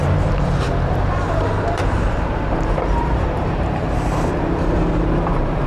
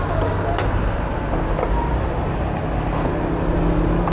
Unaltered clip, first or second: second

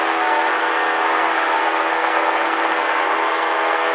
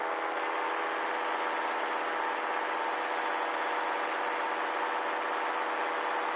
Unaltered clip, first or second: second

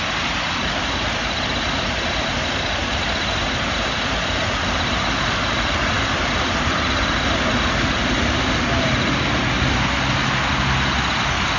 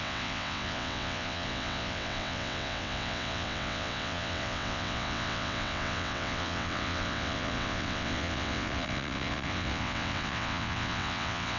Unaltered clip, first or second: first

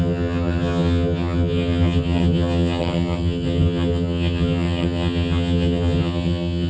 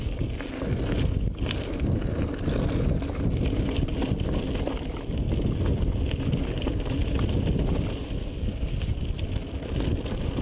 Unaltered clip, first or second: second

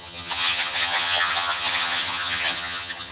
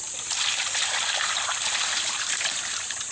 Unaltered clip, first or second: second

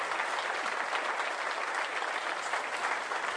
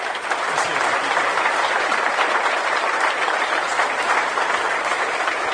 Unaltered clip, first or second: first